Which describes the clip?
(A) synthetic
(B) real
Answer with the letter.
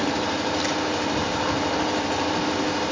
B